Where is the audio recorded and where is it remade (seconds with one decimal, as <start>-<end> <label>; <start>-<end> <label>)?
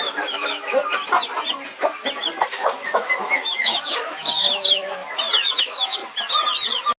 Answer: 0.0-0.8 remade; 0.8-2.5 recorded; 2.5-5.0 remade; 5.0-5.6 recorded; 5.6-6.0 remade; 6.0-7.0 recorded